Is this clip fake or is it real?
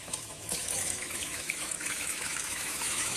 fake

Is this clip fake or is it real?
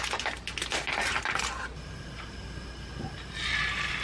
real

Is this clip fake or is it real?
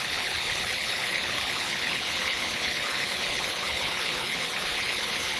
fake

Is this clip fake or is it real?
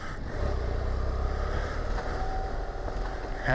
real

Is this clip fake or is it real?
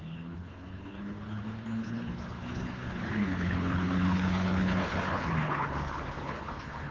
fake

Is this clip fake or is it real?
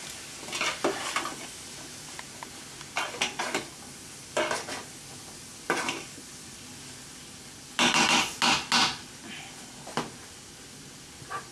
real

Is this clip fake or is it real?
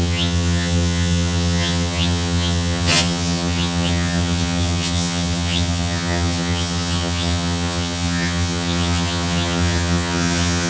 fake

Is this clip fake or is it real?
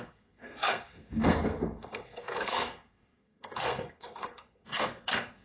fake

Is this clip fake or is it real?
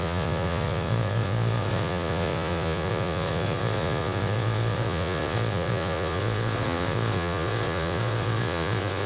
fake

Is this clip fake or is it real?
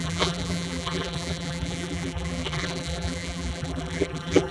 fake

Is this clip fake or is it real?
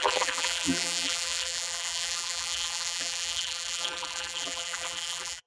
fake